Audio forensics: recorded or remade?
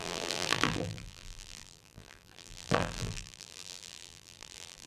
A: remade